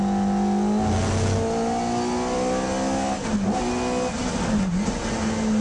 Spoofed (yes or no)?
no